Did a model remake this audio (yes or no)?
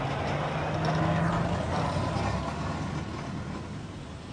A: no